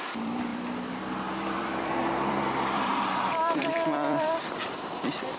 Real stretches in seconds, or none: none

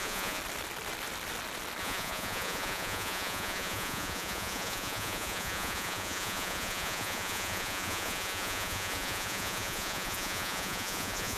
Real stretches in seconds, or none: 0.4-1.8

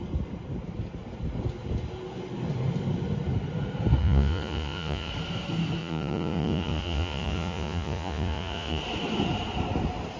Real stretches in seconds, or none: 0.0-4.0; 5.1-5.8; 8.8-10.2

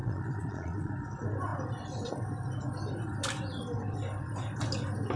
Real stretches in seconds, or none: 0.9-5.2

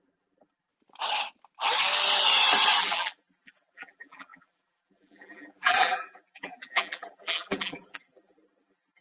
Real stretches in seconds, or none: 0.7-2.8

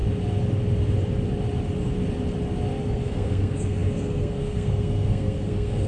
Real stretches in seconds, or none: 0.0-2.9

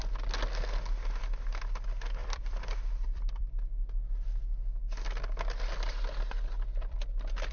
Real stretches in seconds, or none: 0.0-2.2; 3.5-6.7

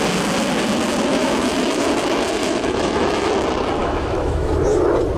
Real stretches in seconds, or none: 0.0-1.1; 1.9-2.4; 3.3-3.8; 4.5-5.2